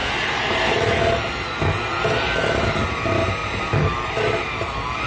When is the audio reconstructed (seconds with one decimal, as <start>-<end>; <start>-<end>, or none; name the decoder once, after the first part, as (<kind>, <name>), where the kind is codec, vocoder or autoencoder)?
none